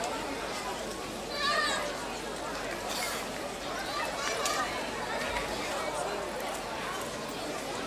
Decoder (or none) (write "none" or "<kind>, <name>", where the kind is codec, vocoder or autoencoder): none